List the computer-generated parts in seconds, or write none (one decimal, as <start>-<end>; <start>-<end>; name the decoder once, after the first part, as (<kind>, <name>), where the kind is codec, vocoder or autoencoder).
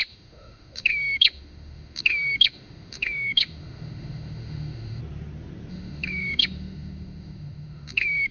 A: 0.0-5.0 (autoencoder, DAC-VAE); 5.7-8.3